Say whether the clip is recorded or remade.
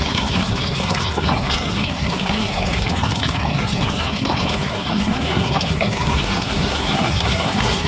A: remade